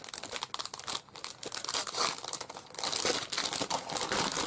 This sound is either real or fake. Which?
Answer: real